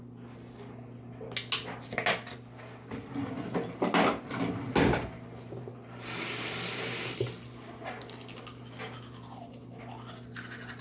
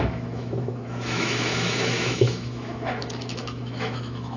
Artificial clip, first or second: second